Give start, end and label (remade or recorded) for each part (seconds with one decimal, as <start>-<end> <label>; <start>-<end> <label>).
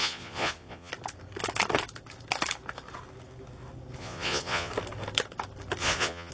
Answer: 0.0-0.9 remade; 0.9-4.0 recorded; 4.0-4.7 remade; 4.7-5.8 recorded; 5.8-6.3 remade